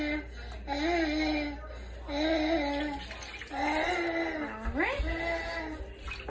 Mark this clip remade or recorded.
recorded